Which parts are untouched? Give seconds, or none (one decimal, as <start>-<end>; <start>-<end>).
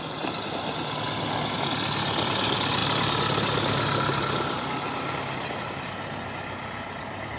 0.0-7.4